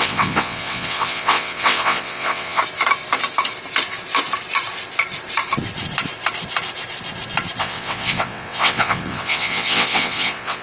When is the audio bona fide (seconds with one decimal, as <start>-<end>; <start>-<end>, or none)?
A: 2.6-7.6